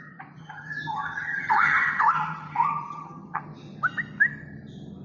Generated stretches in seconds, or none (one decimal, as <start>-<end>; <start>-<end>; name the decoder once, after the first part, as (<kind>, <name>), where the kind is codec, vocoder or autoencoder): 0.4-3.4 (vocoder, HiFi-GAN)